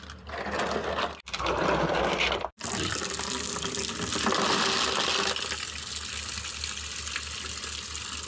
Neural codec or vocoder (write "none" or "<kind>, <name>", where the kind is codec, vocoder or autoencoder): none